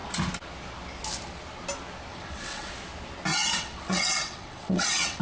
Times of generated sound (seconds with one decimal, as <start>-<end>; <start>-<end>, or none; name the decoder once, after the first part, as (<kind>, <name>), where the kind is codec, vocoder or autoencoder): 2.1-2.7 (vocoder, WaveNeXt); 3.3-5.2